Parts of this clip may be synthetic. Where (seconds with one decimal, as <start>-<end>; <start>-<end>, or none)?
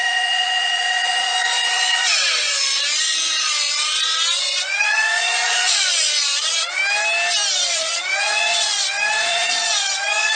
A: 0.0-6.8; 7.5-10.3